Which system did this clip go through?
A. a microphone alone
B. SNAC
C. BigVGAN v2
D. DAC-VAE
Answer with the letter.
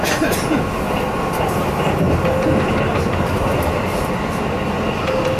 A